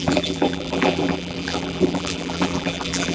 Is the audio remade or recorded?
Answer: remade